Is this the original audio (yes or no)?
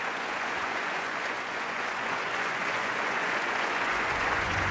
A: no